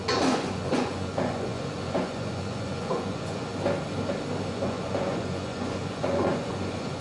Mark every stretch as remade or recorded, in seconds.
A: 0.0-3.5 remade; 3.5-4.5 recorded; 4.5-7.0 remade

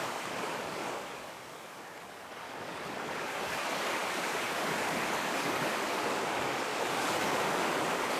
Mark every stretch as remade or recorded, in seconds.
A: 0.0-8.2 remade

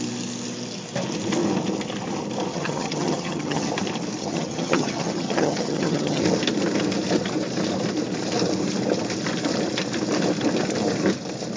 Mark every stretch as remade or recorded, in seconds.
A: 0.0-2.5 recorded; 2.5-3.7 remade; 3.7-4.2 recorded; 4.2-6.2 remade; 6.2-11.6 recorded